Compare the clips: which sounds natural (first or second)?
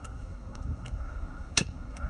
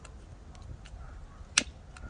second